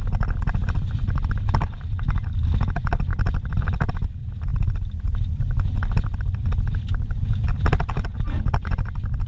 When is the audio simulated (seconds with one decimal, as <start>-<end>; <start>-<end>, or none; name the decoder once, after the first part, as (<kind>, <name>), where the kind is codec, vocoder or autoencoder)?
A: 3.1-3.9 (vocoder, BigVGAN v2); 4.5-5.9